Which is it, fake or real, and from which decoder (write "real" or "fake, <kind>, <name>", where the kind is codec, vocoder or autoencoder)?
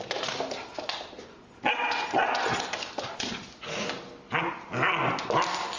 real